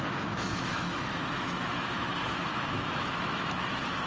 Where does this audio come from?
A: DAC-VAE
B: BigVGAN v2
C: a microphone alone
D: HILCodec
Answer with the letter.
A